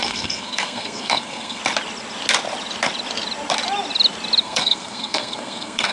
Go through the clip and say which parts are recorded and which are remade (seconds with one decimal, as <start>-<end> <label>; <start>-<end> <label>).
0.0-1.6 remade; 1.6-4.4 recorded; 4.4-5.9 remade